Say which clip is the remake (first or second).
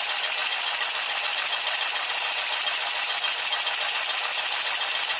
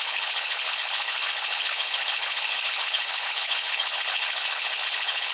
second